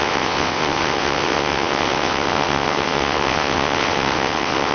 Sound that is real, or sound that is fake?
fake